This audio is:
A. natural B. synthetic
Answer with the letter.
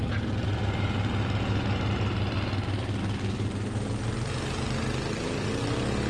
A